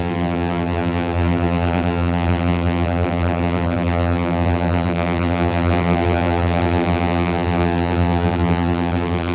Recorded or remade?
remade